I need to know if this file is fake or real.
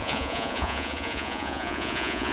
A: fake